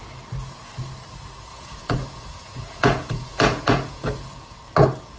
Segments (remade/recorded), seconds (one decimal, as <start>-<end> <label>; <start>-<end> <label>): 0.0-1.5 recorded; 1.5-4.6 remade; 4.6-5.2 recorded